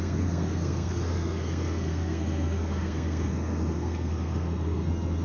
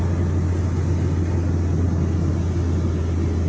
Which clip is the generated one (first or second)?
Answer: first